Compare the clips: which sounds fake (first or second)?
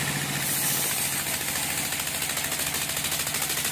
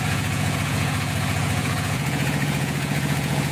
second